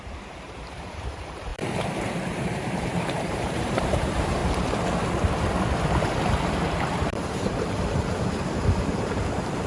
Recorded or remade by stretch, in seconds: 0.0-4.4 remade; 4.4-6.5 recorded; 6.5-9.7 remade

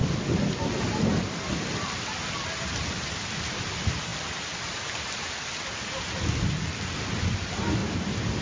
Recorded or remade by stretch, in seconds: 0.0-7.8 remade; 7.8-8.4 recorded

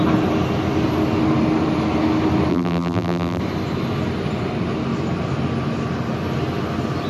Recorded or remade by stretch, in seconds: 0.0-2.5 recorded; 2.5-3.4 remade; 3.4-7.1 recorded

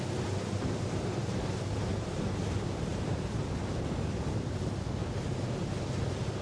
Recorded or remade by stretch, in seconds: 0.0-1.2 recorded; 1.2-1.7 remade; 1.7-2.9 recorded; 2.9-3.4 remade; 3.4-6.4 recorded

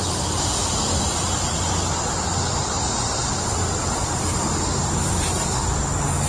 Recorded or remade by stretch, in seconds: 0.0-3.8 recorded; 3.8-5.6 remade; 5.6-6.3 recorded

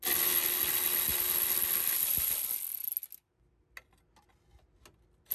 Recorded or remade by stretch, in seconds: 0.0-5.3 recorded

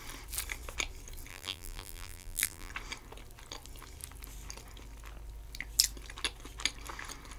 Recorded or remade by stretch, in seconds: 0.0-1.3 recorded; 1.3-2.7 remade; 2.7-7.4 recorded